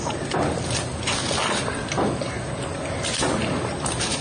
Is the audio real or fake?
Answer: real